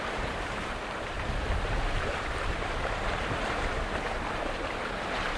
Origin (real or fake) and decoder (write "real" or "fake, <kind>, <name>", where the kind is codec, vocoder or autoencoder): fake, vocoder, BigVGAN v2